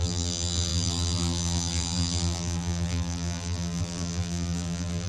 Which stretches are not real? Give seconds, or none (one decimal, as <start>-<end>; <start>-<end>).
0.0-5.1